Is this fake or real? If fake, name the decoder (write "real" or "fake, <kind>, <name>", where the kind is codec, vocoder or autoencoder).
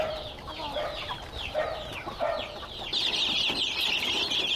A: real